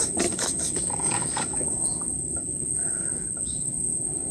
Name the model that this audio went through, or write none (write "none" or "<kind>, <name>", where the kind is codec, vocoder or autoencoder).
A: codec, DAC